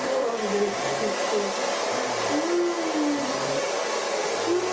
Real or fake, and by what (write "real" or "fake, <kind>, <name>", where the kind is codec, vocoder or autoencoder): real